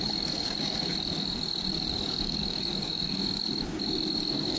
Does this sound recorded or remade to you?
remade